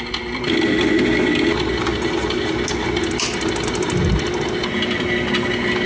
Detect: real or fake real